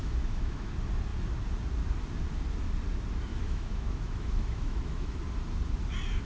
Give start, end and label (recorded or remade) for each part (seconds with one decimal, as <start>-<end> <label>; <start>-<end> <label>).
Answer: 0.0-0.7 remade; 0.7-3.3 recorded; 3.3-5.2 remade; 5.2-6.2 recorded